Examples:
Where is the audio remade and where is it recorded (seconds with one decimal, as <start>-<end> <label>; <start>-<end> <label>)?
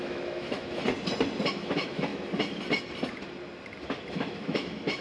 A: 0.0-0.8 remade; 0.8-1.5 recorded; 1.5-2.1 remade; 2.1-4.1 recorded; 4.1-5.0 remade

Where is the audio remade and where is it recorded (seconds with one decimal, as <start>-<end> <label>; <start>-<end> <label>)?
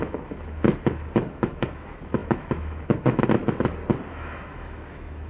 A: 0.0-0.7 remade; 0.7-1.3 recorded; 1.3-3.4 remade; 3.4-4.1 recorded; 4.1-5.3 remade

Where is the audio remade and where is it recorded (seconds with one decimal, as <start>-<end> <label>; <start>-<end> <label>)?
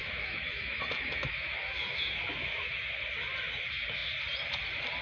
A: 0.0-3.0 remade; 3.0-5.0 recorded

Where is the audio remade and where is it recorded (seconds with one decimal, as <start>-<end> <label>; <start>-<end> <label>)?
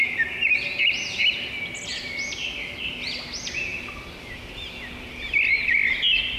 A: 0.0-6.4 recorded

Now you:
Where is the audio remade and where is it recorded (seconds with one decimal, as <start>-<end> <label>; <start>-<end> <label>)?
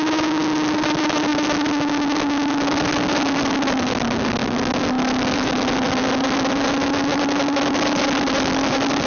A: 0.0-9.1 recorded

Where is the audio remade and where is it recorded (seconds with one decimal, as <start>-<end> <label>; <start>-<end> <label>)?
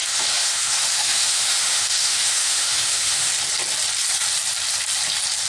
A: 0.0-3.3 remade; 3.3-5.5 recorded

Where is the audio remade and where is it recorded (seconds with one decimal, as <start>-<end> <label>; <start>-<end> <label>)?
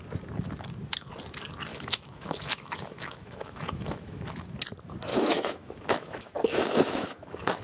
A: 0.0-1.7 recorded; 1.7-4.2 remade; 4.2-5.1 recorded; 5.1-7.6 remade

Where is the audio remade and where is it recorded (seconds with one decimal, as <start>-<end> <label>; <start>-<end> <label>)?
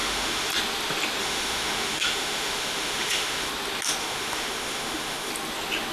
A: 0.0-0.5 remade; 0.5-1.2 recorded; 1.2-3.5 remade; 3.5-4.0 recorded; 4.0-5.3 remade; 5.3-5.9 recorded